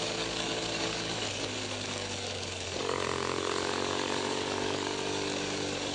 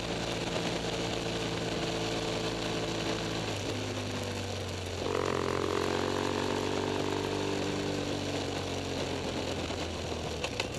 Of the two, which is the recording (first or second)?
second